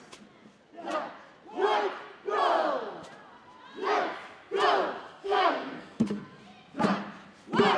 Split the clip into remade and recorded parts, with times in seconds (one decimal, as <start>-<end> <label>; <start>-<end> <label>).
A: 0.0-5.0 recorded; 5.0-6.4 remade; 6.4-7.8 recorded